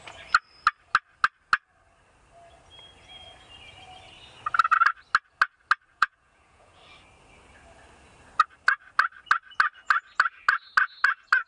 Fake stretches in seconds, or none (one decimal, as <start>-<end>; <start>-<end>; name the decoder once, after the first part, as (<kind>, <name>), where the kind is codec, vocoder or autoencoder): 5.9-6.8 (vocoder, Vocos)